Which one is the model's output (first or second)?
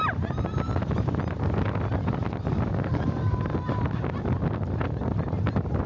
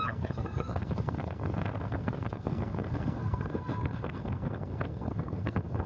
second